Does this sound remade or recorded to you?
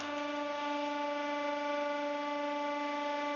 recorded